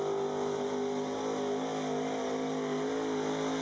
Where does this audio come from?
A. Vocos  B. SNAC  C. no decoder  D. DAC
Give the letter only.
C